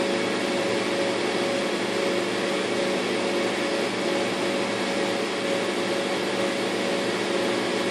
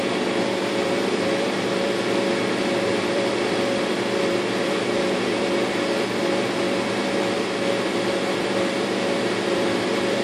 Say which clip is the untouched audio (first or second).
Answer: first